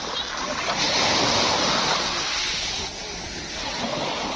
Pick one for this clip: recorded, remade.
recorded